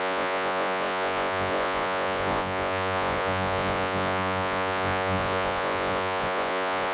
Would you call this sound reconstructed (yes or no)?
yes